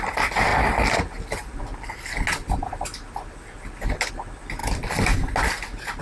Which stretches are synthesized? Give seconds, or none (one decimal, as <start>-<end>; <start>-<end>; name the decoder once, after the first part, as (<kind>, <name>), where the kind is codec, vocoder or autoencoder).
none